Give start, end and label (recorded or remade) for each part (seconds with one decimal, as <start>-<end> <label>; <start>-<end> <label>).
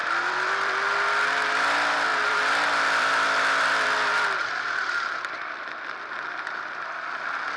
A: 0.0-1.1 remade; 1.1-2.1 recorded; 2.1-6.0 remade; 6.0-7.6 recorded